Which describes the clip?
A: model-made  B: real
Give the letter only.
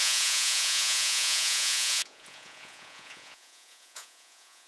A